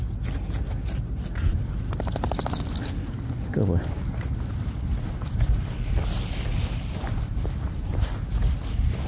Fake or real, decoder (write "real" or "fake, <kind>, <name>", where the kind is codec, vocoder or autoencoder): real